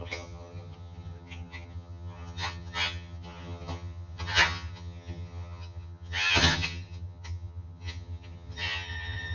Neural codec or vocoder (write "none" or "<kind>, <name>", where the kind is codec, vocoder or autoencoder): vocoder, HiFi-GAN